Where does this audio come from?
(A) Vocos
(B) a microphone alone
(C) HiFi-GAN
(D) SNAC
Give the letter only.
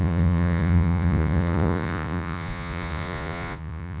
A